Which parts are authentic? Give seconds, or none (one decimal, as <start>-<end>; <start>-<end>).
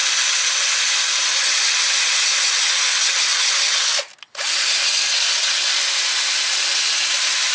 0.0-7.5